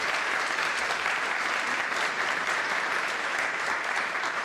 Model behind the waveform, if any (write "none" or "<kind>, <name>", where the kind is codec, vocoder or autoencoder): vocoder, BigVGAN v2